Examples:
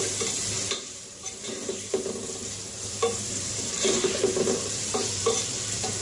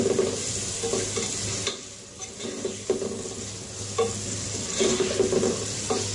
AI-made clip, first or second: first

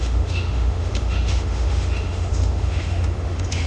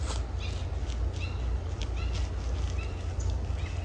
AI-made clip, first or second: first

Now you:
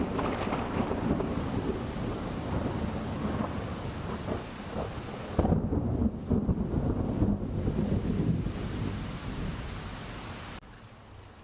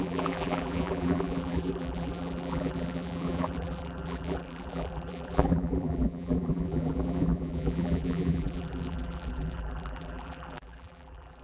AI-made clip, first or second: second